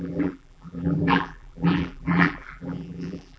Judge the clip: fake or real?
fake